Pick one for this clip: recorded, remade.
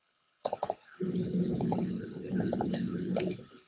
remade